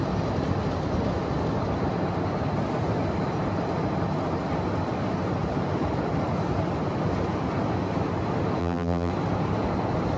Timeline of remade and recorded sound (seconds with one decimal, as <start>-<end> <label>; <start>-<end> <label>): 0.0-8.6 recorded; 8.6-9.1 remade; 9.1-10.2 recorded